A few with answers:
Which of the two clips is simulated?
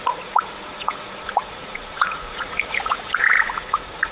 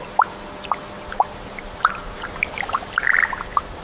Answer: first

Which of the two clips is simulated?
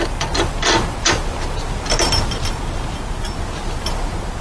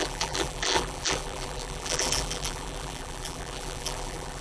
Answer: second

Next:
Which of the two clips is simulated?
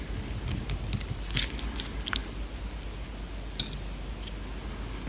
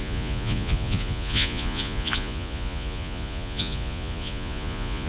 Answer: second